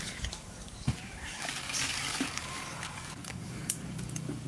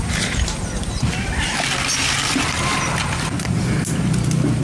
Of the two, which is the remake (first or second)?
first